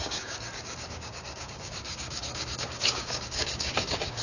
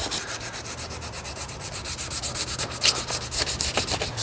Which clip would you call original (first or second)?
second